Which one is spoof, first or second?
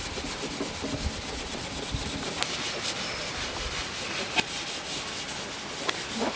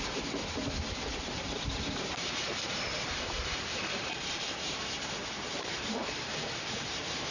second